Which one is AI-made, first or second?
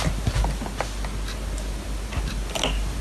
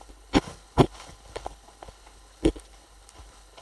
second